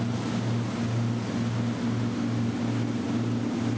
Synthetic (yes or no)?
no